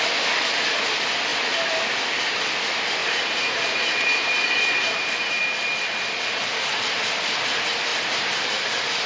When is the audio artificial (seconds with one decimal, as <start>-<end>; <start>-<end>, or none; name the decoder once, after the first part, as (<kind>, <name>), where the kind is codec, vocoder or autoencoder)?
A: 3.0-5.3 (vocoder, BigVGAN v2); 7.9-8.5

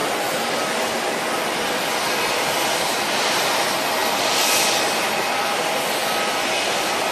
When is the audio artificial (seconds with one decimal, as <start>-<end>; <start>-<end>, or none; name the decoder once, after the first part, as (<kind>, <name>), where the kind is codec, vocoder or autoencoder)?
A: 4.0-4.6 (vocoder, BigVGAN v2); 6.0-6.5

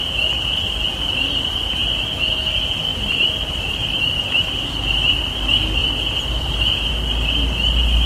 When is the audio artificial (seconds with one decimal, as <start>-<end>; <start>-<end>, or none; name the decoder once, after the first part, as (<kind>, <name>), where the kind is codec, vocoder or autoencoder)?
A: 2.9-4.0 (vocoder, BigVGAN v2); 5.8-6.9

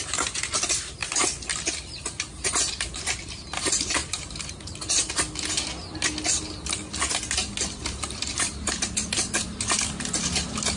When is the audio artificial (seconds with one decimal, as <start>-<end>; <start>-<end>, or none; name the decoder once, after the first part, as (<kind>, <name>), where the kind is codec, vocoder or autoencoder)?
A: 4.0-5.1 (vocoder, BigVGAN v2)

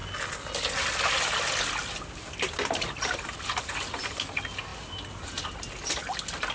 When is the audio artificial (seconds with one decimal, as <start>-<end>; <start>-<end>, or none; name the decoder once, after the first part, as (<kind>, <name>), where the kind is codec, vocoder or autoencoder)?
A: 4.7-5.7 (vocoder, BigVGAN v2)